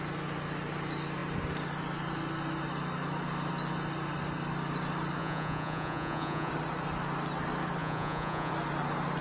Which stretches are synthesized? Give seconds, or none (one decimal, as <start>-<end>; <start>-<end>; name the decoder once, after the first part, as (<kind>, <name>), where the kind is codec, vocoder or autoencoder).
5.2-6.5 (vocoder, Vocos); 7.8-8.5